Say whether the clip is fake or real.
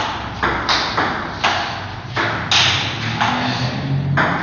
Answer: real